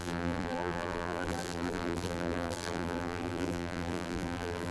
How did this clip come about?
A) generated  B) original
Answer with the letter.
A